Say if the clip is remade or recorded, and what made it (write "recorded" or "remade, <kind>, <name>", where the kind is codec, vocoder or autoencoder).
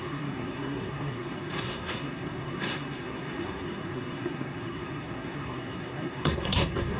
remade, codec, SNAC